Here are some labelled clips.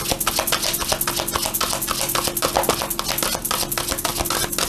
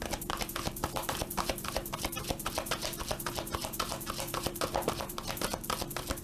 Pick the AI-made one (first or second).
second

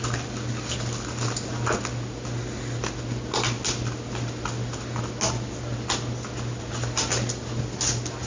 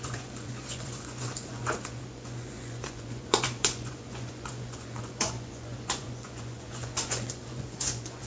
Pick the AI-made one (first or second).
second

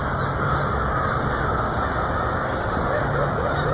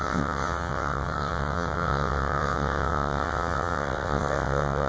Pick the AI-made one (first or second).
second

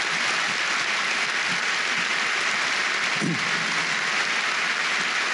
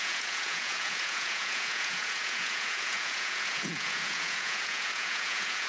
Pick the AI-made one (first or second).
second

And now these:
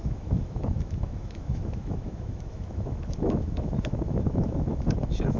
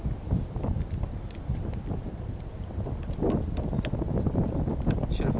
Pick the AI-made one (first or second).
first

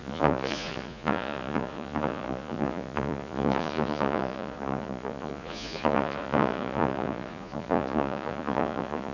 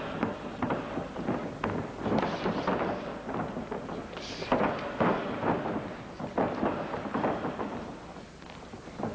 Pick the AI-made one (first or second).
first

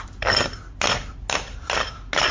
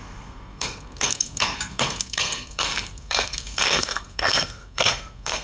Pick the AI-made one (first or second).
second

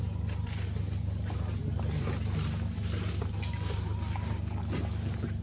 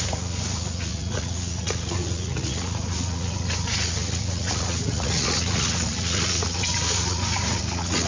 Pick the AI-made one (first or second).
second